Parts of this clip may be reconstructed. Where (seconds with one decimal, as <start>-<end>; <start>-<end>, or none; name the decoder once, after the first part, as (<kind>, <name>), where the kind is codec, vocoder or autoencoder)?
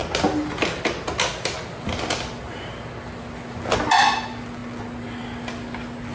none